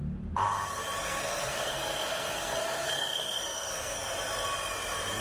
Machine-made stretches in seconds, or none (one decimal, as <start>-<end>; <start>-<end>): 1.0-4.1